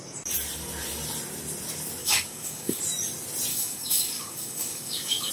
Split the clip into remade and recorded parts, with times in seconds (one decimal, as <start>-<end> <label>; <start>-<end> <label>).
0.0-2.0 recorded; 2.0-2.8 remade; 2.8-3.5 recorded; 3.5-5.3 remade